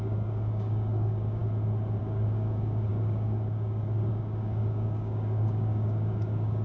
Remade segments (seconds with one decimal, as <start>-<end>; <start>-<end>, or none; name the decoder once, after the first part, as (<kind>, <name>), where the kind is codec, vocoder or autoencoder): 0.0-1.4 (codec, DAC); 2.0-6.6